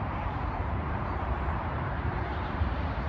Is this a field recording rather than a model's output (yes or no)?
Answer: no